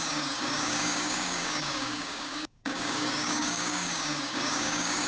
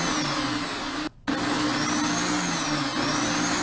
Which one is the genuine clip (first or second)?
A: second